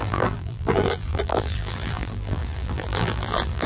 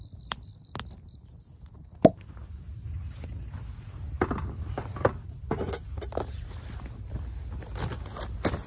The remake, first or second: first